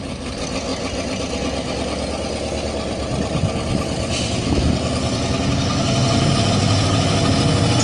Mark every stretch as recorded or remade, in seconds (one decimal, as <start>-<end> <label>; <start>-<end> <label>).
0.0-7.8 recorded